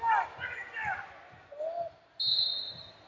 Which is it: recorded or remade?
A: recorded